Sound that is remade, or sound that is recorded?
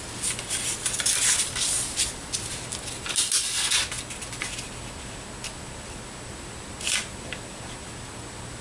recorded